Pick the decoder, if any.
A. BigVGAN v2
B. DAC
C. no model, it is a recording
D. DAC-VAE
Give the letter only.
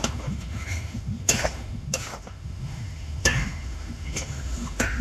D